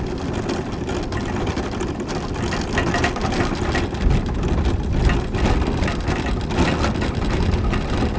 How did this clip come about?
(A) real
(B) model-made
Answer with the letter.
A